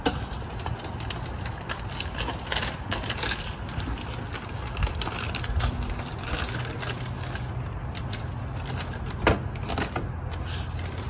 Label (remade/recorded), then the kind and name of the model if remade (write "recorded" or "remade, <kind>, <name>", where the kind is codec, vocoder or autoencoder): recorded